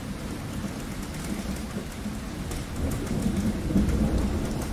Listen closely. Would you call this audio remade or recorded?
recorded